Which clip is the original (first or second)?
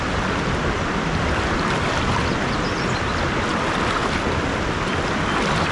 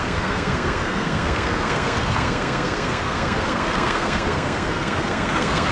first